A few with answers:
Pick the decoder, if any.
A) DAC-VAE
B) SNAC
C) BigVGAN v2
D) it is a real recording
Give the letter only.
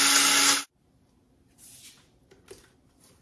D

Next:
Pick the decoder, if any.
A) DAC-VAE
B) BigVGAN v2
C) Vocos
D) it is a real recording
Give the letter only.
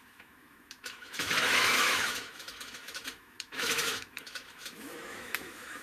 A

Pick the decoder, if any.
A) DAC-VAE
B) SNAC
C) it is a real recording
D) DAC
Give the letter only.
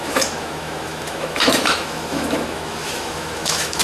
A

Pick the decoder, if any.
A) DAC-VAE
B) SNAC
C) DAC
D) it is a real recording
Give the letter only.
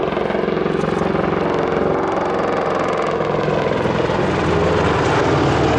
D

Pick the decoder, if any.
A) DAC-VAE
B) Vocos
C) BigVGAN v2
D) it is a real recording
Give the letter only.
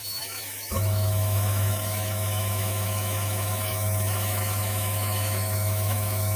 A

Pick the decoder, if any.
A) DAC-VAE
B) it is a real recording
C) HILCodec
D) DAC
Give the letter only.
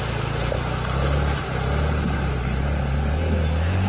B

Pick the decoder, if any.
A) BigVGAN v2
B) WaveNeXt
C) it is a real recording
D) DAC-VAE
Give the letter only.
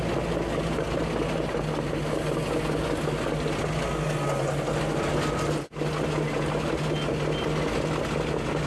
C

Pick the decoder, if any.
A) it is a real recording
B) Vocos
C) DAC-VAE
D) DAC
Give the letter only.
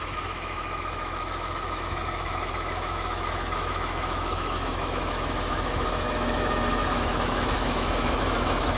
C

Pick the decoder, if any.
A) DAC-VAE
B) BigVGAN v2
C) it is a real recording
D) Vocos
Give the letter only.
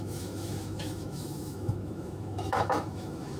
A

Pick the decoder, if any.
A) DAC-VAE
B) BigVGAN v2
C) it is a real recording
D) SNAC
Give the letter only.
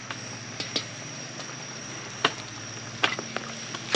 C